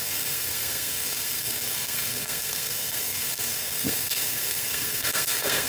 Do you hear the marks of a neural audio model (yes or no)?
yes